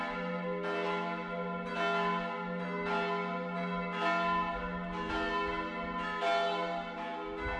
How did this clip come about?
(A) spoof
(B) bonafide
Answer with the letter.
B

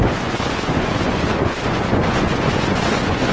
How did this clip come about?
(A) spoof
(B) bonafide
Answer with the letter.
A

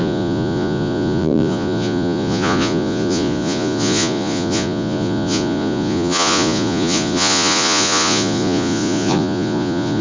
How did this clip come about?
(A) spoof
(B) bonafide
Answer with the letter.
A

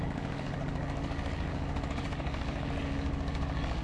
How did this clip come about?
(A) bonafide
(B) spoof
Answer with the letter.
B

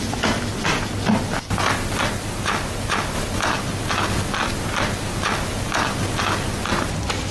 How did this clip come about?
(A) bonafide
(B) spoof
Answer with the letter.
A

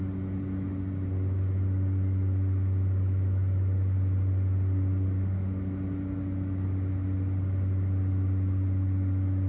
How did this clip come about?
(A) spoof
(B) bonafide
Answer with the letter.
B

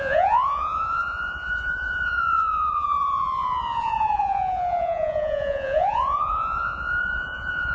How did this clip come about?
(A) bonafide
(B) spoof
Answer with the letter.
B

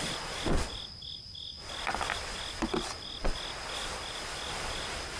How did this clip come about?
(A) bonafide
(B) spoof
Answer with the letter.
A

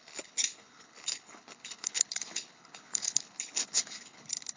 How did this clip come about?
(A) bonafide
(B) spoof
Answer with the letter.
B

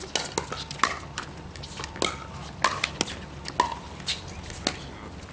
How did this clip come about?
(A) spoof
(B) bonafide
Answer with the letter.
B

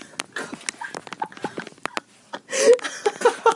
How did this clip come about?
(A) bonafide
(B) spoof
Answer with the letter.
A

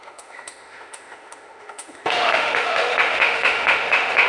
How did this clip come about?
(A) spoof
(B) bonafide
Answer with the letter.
A